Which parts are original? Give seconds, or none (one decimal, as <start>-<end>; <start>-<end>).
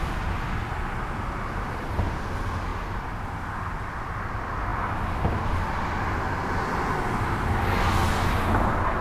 0.0-9.0